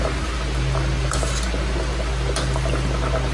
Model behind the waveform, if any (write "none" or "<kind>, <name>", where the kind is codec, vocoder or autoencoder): none